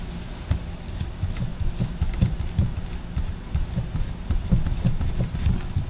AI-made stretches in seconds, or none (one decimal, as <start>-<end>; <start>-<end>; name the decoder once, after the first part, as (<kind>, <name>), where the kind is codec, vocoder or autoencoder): none